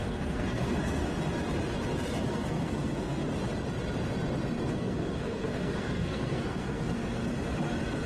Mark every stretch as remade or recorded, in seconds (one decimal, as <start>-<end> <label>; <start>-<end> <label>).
0.0-1.1 remade; 1.1-2.2 recorded; 2.2-3.2 remade; 3.2-4.7 recorded; 4.7-7.2 remade; 7.2-8.1 recorded